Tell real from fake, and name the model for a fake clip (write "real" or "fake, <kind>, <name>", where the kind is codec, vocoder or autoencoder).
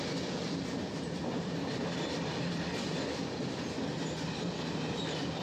real